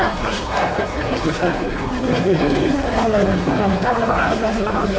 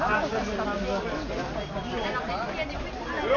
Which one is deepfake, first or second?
first